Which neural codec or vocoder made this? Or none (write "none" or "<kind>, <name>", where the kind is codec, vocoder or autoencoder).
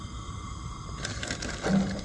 none